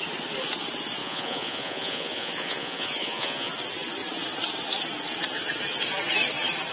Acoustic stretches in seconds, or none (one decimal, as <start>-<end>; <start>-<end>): 0.0-1.0; 3.5-6.7